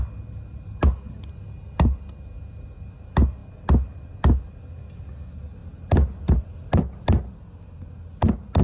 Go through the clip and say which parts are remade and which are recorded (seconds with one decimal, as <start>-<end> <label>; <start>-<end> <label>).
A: 0.0-8.6 recorded